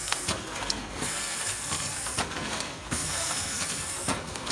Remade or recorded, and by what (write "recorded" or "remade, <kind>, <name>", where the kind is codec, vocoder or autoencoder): remade, codec, SNAC